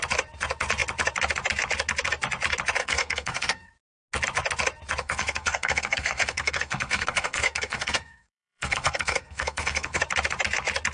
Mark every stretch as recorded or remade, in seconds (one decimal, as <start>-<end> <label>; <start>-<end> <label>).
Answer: 0.0-2.8 recorded; 2.8-3.7 remade; 3.7-5.0 recorded; 5.0-10.0 remade; 10.0-10.9 recorded